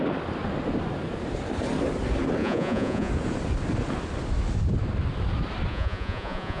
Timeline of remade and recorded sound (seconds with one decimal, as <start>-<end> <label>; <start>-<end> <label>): 0.0-2.4 recorded; 2.4-3.1 remade; 3.1-5.7 recorded; 5.7-6.6 remade